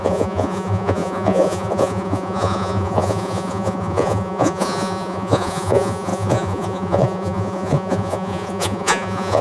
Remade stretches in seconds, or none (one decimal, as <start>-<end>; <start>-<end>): 0.0-9.4